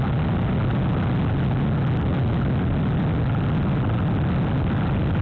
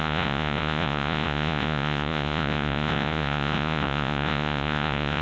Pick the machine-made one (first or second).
second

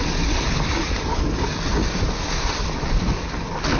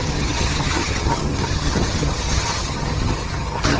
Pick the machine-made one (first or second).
second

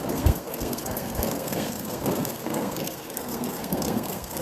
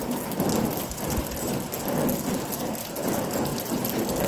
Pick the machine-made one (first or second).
first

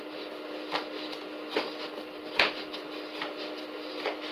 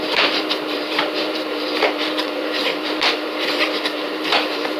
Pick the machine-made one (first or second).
second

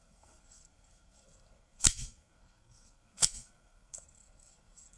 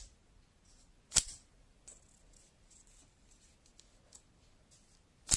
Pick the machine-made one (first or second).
first